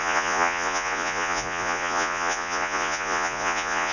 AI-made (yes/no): yes